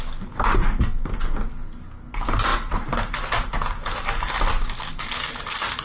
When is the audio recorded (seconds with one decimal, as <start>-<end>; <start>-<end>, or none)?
0.0-5.8